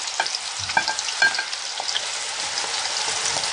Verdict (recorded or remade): recorded